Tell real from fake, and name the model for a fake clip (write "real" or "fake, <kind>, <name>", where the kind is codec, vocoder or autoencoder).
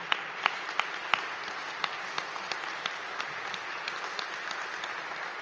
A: real